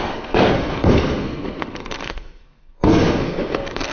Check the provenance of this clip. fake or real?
fake